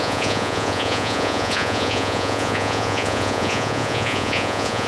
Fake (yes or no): yes